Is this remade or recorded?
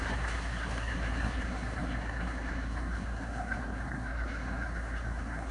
remade